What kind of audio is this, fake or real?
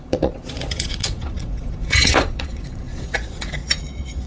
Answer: fake